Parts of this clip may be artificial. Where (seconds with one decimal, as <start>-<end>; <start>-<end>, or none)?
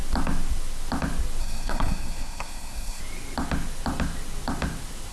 1.4-3.0